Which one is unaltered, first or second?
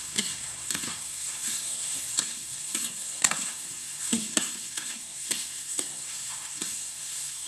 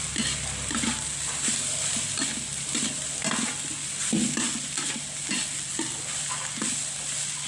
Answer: second